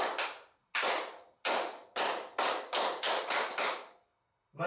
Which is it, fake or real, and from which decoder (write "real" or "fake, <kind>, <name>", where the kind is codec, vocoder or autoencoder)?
real